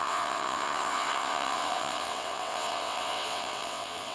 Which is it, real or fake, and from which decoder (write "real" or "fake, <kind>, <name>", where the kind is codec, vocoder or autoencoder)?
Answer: fake, vocoder, WaveNeXt